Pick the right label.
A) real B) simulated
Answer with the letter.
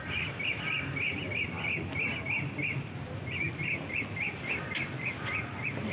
A